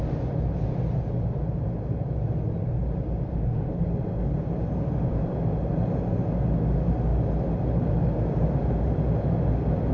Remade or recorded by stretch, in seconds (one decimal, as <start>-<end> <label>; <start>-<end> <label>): 0.0-3.3 recorded; 3.3-3.8 remade; 3.8-9.9 recorded